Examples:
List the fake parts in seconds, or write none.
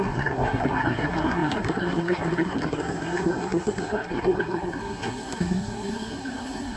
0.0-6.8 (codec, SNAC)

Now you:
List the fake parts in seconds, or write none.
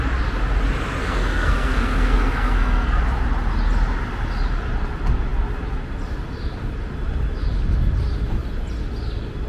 1.0-3.0 (codec, SNAC)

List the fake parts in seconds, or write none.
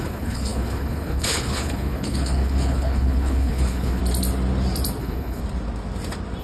0.0-4.0 (codec, HILCodec); 5.0-5.4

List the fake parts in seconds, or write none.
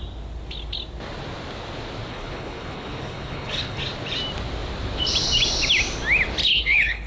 2.1-3.8 (codec, HILCodec); 6.4-7.1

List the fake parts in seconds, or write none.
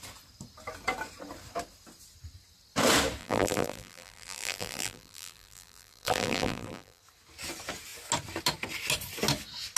3.2-7.0 (vocoder, BigVGAN v2)